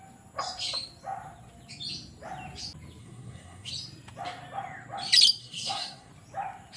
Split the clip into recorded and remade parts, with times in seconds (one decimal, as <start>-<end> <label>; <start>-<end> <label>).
0.0-3.0 recorded; 3.0-3.7 remade; 3.7-5.4 recorded; 5.4-6.1 remade; 6.1-6.8 recorded